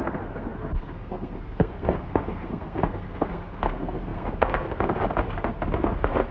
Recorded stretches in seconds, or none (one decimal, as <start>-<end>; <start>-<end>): none